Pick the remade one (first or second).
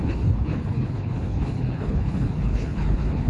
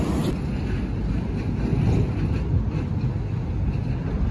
first